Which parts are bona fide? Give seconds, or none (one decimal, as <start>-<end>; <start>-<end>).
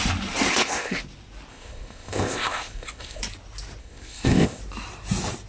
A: 0.0-0.5; 1.0-1.5; 3.2-3.8; 4.6-5.5